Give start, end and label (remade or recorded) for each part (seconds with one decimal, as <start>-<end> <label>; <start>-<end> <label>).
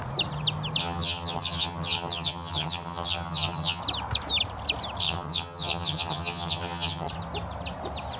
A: 0.0-0.8 recorded; 0.8-3.8 remade; 3.8-5.0 recorded; 5.0-7.1 remade; 7.1-8.2 recorded